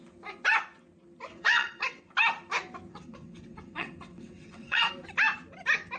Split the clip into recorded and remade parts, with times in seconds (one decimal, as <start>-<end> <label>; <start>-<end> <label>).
0.0-1.3 recorded; 1.3-2.1 remade; 2.1-2.9 recorded; 2.9-4.9 remade; 4.9-6.0 recorded